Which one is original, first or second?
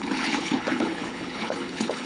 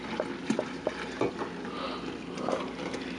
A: second